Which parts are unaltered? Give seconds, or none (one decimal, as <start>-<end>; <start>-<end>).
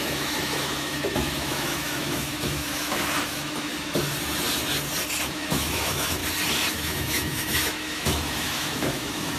3.7-5.3; 6.2-6.7